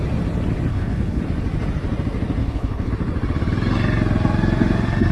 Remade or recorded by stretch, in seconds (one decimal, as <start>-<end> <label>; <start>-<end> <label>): 0.0-0.7 recorded; 0.7-1.2 remade; 1.2-2.4 recorded; 2.4-2.9 remade; 2.9-5.1 recorded

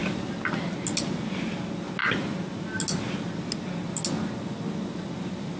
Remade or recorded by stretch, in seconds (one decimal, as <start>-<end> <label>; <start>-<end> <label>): 0.0-5.6 recorded

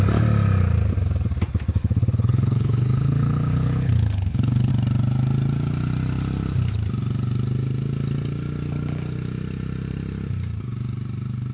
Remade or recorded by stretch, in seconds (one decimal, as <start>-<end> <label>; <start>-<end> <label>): 0.0-1.8 recorded; 1.8-4.7 remade; 4.7-11.5 recorded

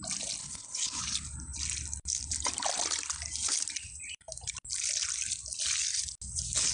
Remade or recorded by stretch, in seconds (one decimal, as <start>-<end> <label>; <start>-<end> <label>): 0.0-0.4 recorded; 0.4-1.0 remade; 1.0-6.7 recorded

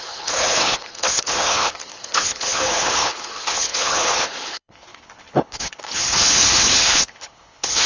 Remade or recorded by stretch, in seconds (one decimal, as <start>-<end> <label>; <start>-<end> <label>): 0.0-7.9 remade

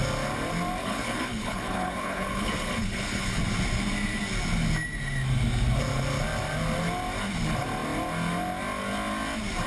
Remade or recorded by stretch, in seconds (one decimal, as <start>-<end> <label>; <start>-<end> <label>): 0.0-0.8 recorded; 0.8-3.4 remade; 3.4-9.7 recorded